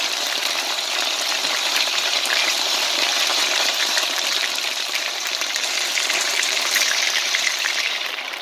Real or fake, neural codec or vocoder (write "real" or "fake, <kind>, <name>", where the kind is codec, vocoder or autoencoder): fake, vocoder, BigVGAN v2